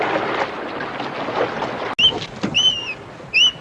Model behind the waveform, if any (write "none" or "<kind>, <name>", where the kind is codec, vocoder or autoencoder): none